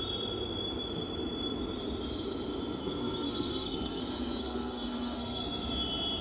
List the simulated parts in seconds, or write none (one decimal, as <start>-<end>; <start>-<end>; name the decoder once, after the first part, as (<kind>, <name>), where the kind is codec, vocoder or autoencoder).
2.8-4.0 (codec, SNAC); 4.4-5.4

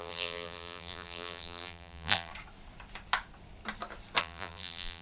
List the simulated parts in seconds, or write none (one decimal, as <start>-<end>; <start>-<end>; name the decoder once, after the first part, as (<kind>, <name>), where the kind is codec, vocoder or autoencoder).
0.0-2.3 (vocoder, BigVGAN v2); 4.2-5.0

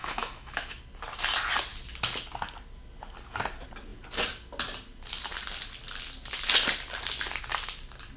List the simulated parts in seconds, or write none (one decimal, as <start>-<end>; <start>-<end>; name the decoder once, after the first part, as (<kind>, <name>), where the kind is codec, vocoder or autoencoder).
0.0-0.8 (autoencoder, DAC-VAE)

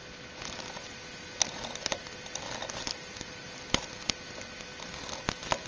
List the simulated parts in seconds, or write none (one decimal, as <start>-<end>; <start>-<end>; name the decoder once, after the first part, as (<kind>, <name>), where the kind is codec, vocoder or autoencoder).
none

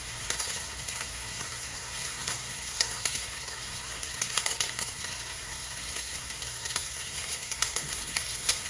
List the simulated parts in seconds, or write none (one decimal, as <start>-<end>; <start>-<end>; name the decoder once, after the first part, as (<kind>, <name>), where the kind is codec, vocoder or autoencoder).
0.0-8.7 (codec, SNAC)

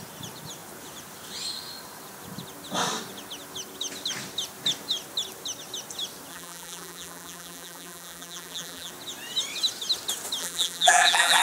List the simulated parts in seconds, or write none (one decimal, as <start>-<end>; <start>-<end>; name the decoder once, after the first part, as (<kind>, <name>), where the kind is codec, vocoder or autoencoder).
6.3-8.9 (vocoder, BigVGAN v2); 10.4-11.4

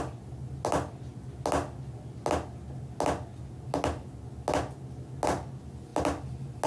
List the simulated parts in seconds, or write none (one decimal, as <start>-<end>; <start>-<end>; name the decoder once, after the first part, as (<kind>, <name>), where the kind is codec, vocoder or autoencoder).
none

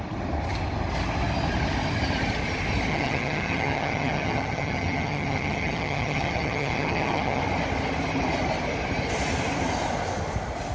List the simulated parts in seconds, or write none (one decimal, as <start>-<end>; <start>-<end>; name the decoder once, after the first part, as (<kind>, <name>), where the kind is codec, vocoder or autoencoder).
2.9-7.4 (vocoder, HiFi-GAN)